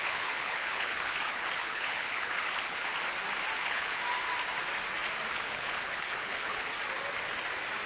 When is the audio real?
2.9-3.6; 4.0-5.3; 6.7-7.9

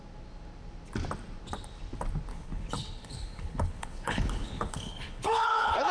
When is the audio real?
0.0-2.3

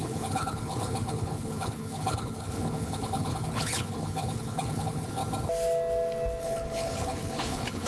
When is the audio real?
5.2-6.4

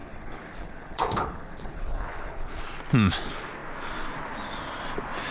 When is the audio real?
2.6-5.3

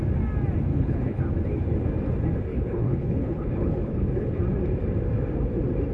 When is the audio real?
0.0-0.7; 1.2-2.5; 4.4-5.9

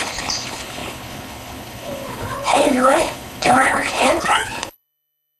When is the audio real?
none

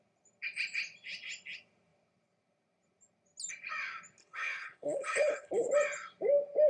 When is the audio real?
0.0-4.2; 5.7-6.7